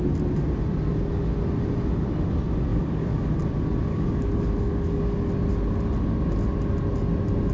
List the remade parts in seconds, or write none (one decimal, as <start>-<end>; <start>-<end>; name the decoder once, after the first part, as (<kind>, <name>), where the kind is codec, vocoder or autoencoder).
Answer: 2.7-3.3 (codec, DAC); 3.9-5.3

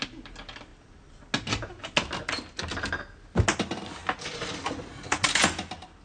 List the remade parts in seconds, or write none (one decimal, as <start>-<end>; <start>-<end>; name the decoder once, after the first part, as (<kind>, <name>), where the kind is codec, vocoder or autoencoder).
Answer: none

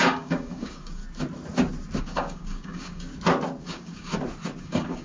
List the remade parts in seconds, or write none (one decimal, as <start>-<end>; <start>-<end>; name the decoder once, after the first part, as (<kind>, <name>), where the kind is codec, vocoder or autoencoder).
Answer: 0.0-1.0 (codec, DAC); 2.0-3.1; 3.6-4.1; 4.6-5.0

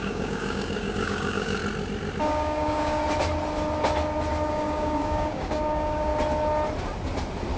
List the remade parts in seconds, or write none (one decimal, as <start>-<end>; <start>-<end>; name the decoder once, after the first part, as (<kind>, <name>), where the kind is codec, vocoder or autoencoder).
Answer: 0.0-1.6 (codec, DAC); 2.2-3.0; 4.5-6.1

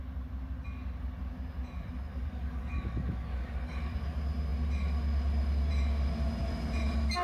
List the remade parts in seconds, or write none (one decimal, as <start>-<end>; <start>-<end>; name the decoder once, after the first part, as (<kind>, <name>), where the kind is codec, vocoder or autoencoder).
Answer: 2.1-3.9 (codec, DAC)

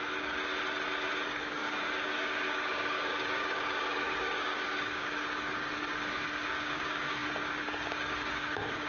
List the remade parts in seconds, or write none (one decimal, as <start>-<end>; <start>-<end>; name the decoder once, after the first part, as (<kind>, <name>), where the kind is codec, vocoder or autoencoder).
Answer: 0.0-0.5 (codec, DAC); 1.2-8.9